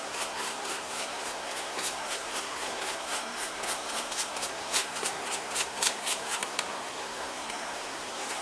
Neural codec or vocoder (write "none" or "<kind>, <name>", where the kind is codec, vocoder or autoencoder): codec, SNAC